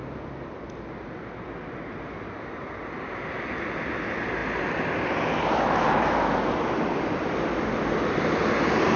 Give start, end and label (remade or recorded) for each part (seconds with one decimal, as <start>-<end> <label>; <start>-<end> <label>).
0.0-9.0 recorded